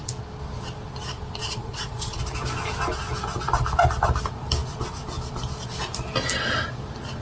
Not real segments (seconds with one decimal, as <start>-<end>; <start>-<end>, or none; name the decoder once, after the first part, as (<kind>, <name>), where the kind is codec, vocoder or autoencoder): 1.4-2.2 (vocoder, Vocos)